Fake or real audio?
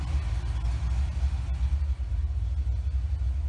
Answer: real